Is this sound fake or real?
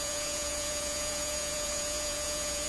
fake